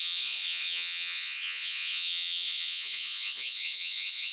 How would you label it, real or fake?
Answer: fake